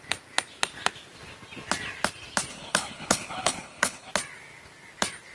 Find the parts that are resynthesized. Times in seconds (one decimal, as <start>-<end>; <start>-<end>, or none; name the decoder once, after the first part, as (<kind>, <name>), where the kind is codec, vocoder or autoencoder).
2.5-4.1 (codec, HILCodec)